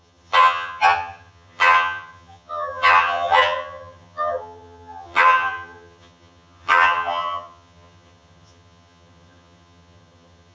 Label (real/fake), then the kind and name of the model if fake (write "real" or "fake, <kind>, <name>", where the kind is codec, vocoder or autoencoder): fake, vocoder, HiFi-GAN